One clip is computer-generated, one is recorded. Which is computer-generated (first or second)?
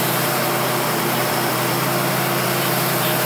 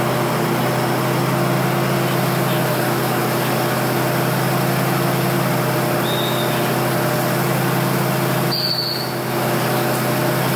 first